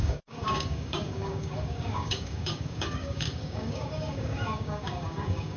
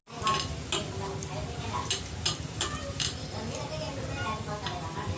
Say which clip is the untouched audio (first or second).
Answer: second